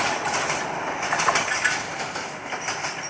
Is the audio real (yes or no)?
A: yes